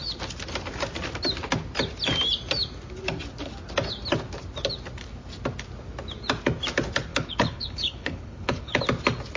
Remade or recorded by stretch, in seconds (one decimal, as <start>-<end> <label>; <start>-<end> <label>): 0.0-7.1 recorded; 7.1-8.8 remade; 8.8-9.4 recorded